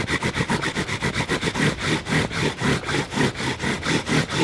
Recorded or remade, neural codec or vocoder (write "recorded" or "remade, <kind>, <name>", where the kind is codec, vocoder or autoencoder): recorded